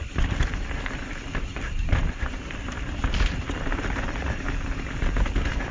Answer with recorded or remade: recorded